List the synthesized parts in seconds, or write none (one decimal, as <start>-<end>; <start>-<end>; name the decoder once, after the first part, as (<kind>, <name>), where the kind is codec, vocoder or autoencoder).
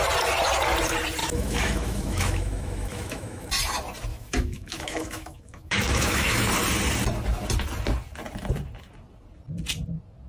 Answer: 1.2-3.5 (autoencoder, DAC-VAE); 4.1-6.5